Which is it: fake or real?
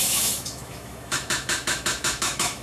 fake